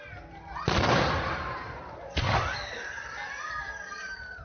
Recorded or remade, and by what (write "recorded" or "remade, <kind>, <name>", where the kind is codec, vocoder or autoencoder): recorded